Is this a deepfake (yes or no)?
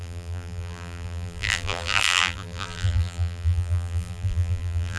yes